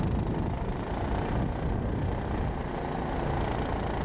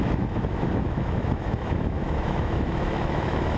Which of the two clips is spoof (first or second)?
second